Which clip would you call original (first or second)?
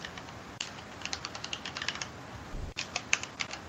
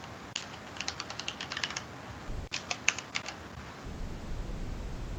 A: second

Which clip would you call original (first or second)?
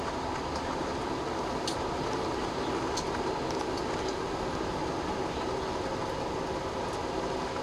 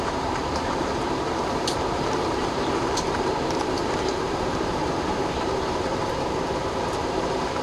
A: first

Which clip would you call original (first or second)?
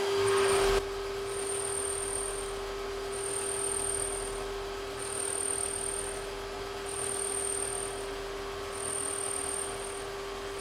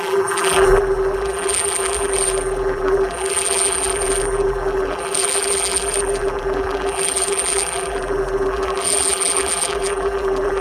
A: first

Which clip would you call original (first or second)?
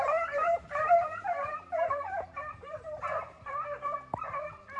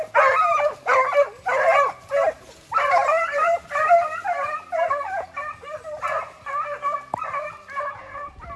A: second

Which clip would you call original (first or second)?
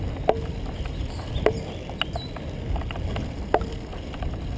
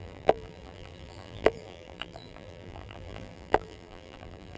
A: first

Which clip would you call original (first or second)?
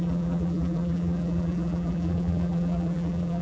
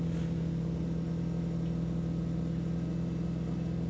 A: second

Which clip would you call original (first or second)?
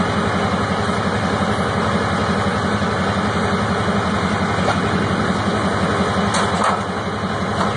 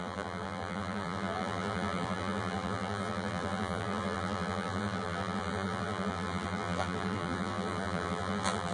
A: first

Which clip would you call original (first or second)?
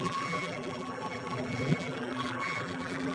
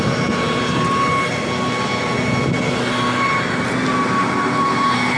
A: second